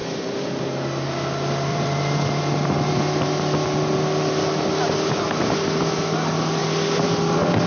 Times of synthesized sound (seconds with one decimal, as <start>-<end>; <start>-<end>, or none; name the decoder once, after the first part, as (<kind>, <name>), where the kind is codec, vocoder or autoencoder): 0.0-0.6 (vocoder, BigVGAN v2); 1.7-2.4; 6.6-7.7